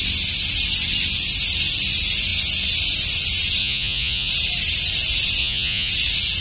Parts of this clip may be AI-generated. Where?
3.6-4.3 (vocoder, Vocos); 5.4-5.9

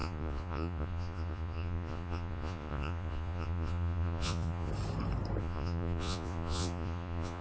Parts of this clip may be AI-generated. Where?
0.0-4.7 (vocoder, Vocos); 5.4-7.4

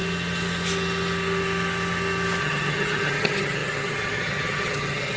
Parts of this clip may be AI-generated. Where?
2.4-5.2 (vocoder, HiFi-GAN)

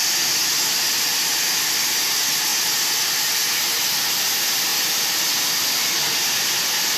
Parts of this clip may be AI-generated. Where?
4.7-5.3 (vocoder, BigVGAN v2)

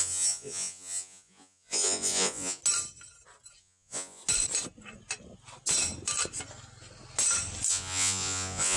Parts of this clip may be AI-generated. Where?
0.0-2.6 (vocoder, Vocos); 3.6-4.2; 7.7-8.8